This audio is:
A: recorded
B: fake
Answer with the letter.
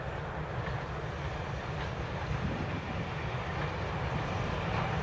A